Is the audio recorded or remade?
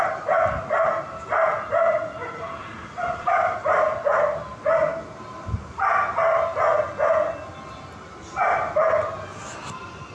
recorded